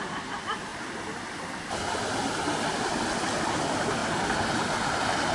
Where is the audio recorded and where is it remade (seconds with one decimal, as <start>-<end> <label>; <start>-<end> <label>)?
0.0-5.3 recorded